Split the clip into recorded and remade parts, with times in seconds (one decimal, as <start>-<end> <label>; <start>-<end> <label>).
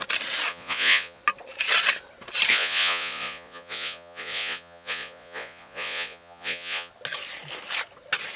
0.0-0.5 recorded; 0.5-1.2 remade; 1.2-2.5 recorded; 2.5-6.9 remade; 6.9-8.4 recorded